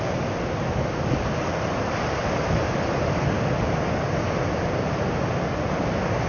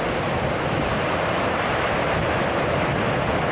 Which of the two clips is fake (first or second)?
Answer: second